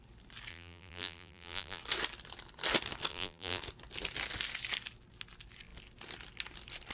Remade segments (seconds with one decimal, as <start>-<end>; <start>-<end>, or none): 0.5-1.8; 3.1-3.6